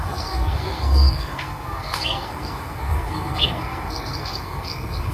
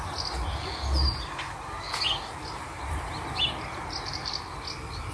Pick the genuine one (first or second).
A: second